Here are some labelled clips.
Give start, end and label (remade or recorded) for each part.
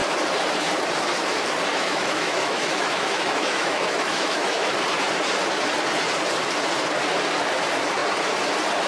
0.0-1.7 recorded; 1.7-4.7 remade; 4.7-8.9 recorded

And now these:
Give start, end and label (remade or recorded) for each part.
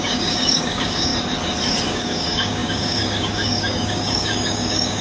0.0-1.1 remade; 1.1-1.9 recorded; 1.9-5.0 remade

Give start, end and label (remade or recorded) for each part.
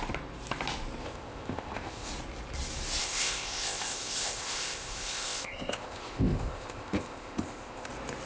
0.0-1.0 recorded; 1.0-2.1 remade; 2.1-3.0 recorded; 3.0-7.9 remade; 7.9-8.3 recorded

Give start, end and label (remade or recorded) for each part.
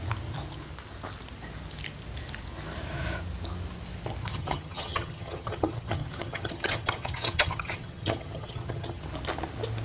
0.0-4.3 recorded; 4.3-9.0 remade; 9.0-9.8 recorded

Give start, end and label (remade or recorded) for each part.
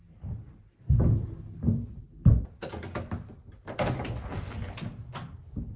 0.0-5.8 recorded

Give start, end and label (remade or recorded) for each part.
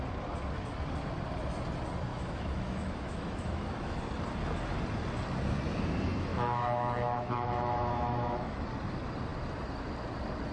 0.0-2.1 recorded; 2.1-4.0 remade; 4.0-6.3 recorded; 6.3-8.7 remade; 8.7-10.5 recorded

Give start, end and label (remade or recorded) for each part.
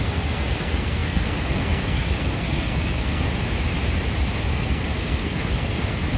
0.0-3.3 remade; 3.3-4.5 recorded; 4.5-6.2 remade